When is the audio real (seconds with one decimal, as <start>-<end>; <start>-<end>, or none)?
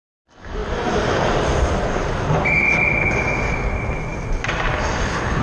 0.0-5.4